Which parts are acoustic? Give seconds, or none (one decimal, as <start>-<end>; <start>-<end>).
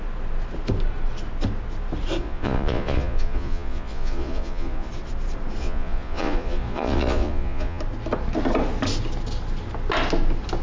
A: 0.0-2.2; 4.9-5.6; 7.8-10.6